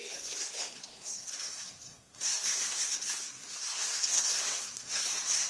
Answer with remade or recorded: remade